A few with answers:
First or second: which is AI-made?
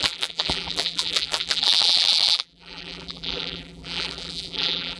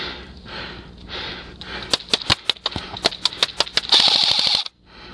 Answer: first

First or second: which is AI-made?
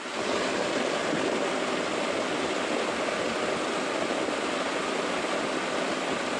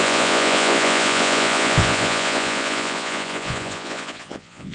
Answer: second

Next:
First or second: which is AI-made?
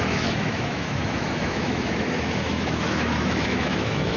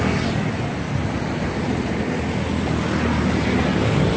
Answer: first